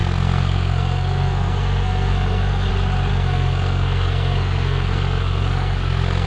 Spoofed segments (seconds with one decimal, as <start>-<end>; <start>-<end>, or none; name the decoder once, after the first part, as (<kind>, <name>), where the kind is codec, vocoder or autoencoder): 0.0-2.7 (codec, SNAC); 3.1-6.3